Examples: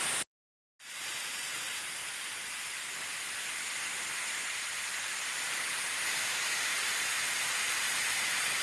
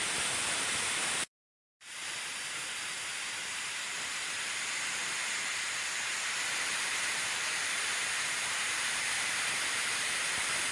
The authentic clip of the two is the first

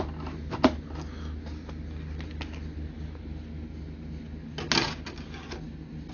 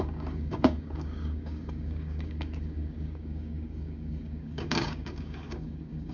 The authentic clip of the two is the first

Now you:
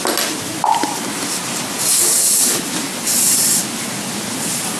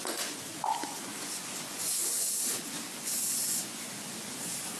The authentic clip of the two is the first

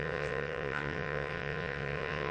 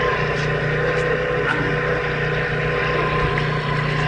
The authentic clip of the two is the second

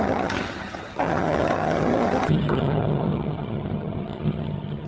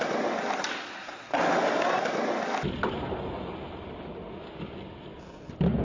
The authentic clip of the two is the second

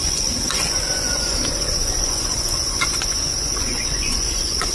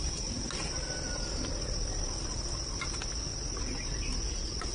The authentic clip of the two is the second